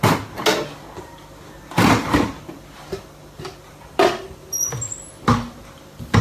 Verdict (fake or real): real